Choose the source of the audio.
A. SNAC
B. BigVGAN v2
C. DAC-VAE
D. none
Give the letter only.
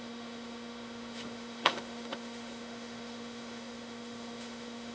C